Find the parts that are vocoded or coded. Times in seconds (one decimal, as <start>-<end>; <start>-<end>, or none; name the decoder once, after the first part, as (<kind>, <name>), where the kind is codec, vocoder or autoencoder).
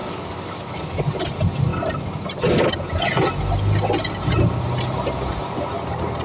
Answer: 0.0-1.0 (codec, DAC)